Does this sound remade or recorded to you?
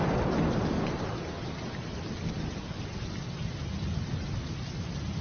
recorded